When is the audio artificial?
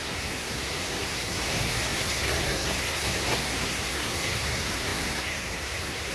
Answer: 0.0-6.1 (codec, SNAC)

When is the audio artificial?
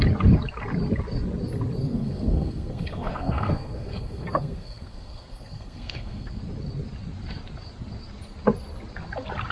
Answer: 1.8-6.4 (codec, SNAC)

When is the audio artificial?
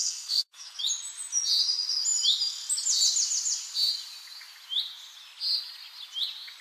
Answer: 0.0-0.8 (codec, SNAC)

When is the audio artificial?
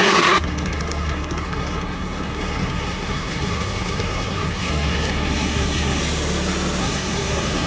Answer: 0.0-6.0 (codec, SNAC); 6.8-7.7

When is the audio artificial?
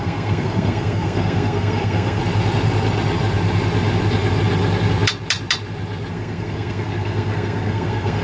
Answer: 0.0-2.2 (codec, SNAC); 6.1-8.2